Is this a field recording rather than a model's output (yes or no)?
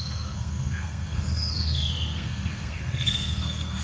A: no